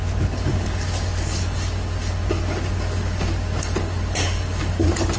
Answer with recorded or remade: remade